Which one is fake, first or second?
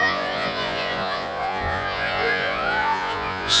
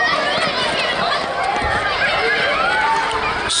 first